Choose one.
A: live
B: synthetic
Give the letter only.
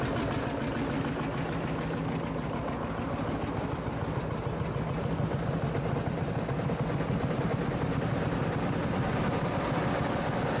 A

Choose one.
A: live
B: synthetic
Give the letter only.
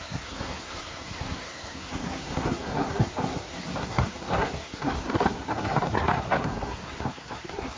B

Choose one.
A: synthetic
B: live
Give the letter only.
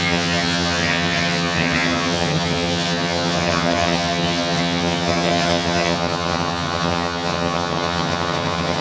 A